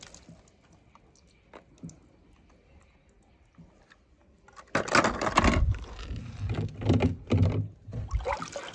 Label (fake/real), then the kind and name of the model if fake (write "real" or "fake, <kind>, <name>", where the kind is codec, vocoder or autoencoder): real